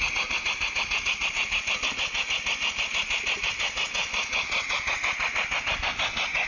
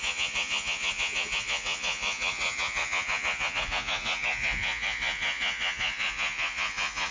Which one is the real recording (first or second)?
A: first